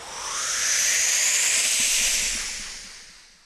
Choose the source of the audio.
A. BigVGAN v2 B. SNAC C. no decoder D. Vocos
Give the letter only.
C